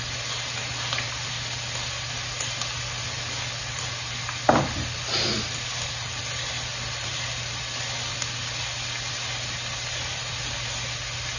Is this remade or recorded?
recorded